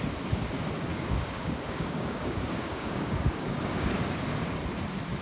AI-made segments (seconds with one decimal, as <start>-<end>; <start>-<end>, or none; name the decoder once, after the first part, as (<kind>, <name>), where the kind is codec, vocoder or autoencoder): 0.9-3.9 (codec, DAC)